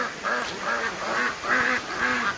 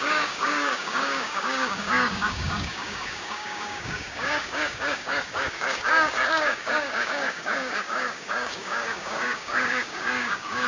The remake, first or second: second